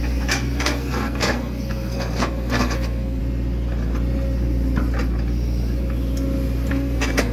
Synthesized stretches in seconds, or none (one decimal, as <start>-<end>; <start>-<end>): 0.0-3.2; 6.7-7.3